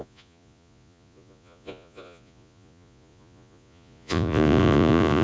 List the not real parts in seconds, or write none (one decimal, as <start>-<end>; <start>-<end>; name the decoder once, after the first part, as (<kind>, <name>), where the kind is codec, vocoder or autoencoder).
0.0-5.2 (vocoder, Vocos)